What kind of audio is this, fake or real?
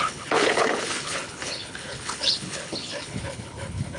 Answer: fake